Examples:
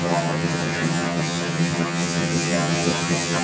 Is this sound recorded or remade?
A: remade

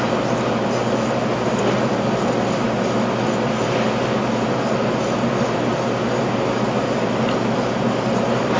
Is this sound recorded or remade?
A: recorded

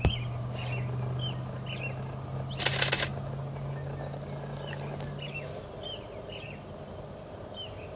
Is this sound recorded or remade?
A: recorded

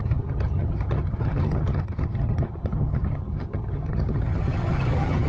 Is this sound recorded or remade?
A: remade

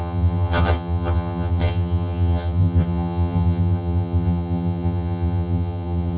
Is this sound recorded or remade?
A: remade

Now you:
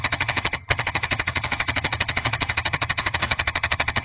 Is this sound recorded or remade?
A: remade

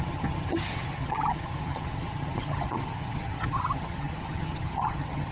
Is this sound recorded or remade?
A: remade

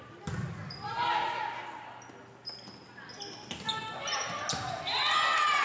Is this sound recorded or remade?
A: recorded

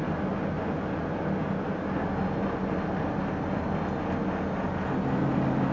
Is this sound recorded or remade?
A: recorded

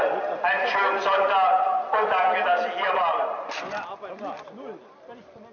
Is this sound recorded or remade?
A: recorded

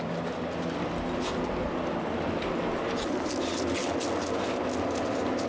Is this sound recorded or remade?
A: recorded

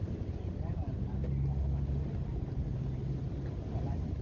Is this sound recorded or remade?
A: recorded